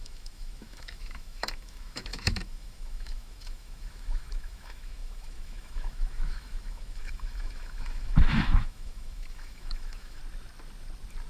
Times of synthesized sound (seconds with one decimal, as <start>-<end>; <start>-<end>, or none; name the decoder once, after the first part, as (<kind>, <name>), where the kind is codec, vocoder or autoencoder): 0.0-10.2 (autoencoder, DAC-VAE)